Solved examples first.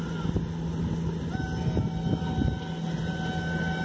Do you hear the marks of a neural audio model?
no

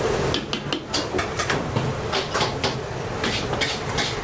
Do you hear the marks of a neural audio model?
no